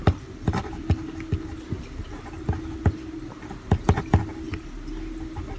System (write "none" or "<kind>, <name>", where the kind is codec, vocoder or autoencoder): none